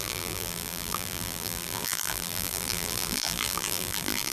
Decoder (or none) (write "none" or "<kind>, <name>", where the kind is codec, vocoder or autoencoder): vocoder, BigVGAN v2